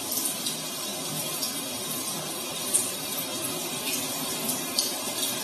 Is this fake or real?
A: real